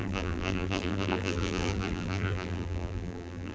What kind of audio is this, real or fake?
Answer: fake